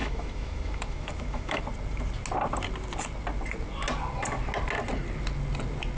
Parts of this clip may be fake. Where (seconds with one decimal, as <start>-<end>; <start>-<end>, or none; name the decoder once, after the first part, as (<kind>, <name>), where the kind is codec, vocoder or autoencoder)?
0.0-1.6 (autoencoder, DAC-VAE)

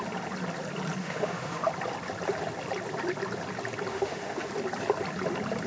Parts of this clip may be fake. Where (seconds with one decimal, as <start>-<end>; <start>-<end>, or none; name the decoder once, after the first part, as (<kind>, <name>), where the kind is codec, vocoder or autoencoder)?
1.0-1.7 (autoencoder, DAC-VAE); 3.9-4.5

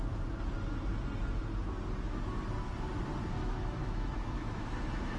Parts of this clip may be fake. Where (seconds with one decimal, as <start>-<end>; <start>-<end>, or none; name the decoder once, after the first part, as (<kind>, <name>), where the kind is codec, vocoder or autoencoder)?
3.4-5.2 (autoencoder, DAC-VAE)